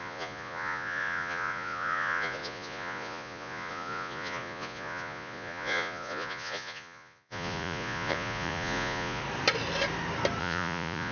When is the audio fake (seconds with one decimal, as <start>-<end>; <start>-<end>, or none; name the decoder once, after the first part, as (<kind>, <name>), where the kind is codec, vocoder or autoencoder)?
0.0-9.2 (vocoder, Vocos); 10.4-11.1